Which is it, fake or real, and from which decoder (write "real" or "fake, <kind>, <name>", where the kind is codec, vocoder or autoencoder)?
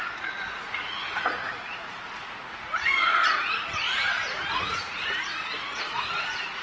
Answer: fake, vocoder, Vocos